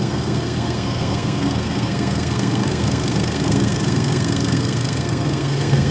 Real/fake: fake